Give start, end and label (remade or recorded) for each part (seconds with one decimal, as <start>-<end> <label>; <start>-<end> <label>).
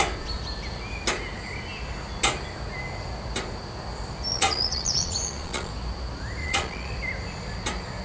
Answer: 0.0-4.3 recorded; 4.3-5.7 remade; 5.7-6.4 recorded; 6.4-6.9 remade; 6.9-8.0 recorded